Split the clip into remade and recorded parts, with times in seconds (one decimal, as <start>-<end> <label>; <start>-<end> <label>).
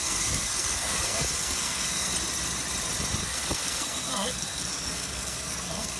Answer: 0.0-2.1 remade; 2.1-3.2 recorded; 3.2-6.0 remade